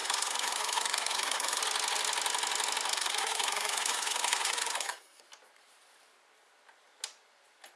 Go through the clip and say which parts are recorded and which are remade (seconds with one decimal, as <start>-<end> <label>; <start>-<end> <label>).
0.0-1.6 remade; 1.6-2.9 recorded; 2.9-5.2 remade; 5.2-7.8 recorded